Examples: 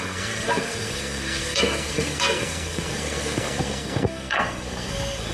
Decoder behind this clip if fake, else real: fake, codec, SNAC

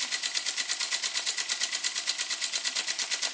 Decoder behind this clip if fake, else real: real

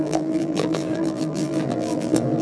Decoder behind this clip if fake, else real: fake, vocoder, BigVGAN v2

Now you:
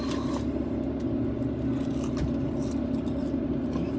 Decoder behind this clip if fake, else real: real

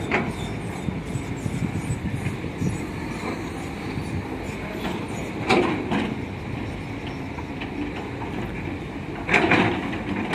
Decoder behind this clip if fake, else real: real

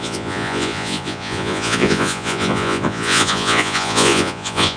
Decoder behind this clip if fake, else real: fake, vocoder, Vocos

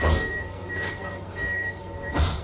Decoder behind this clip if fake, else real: fake, codec, SNAC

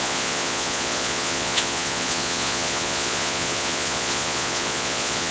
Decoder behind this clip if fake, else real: fake, vocoder, Vocos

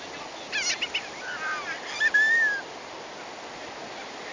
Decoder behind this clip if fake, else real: real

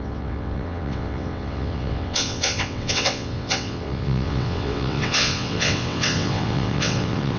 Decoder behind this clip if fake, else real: fake, vocoder, WaveNeXt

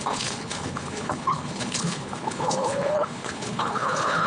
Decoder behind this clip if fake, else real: fake, codec, HILCodec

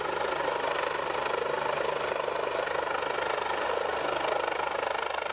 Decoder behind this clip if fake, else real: real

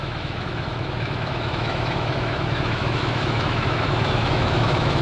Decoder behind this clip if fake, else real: fake, autoencoder, DAC-VAE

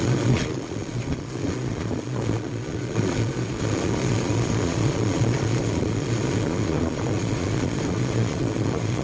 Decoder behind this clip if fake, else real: fake, vocoder, Vocos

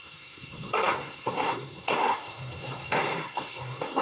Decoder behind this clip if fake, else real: fake, codec, SNAC